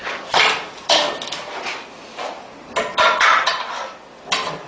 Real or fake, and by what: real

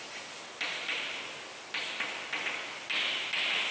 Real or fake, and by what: real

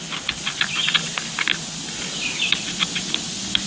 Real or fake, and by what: real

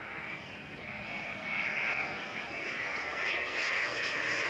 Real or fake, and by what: fake, codec, SNAC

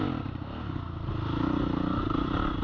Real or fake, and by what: real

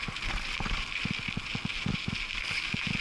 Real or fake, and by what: real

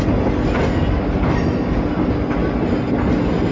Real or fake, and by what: real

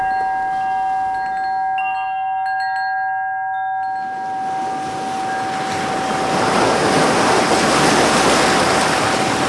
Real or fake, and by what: real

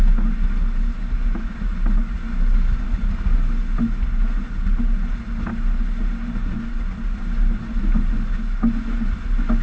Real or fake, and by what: real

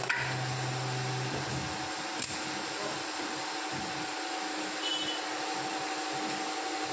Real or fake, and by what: real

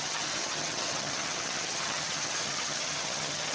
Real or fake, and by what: fake, vocoder, HiFi-GAN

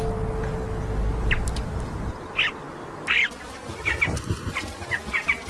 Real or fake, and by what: real